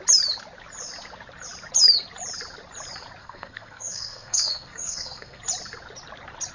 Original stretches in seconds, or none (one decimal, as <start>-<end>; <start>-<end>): 0.0-3.2; 5.4-6.5